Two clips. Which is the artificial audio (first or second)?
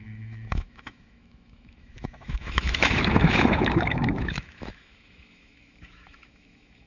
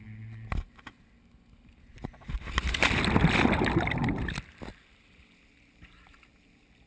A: first